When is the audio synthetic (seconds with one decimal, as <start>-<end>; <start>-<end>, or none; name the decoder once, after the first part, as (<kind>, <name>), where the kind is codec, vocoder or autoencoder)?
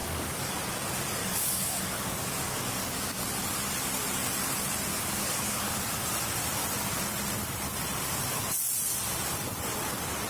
0.0-0.5 (codec, DAC); 1.2-3.2; 4.9-6.0